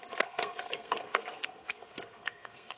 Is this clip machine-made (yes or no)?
yes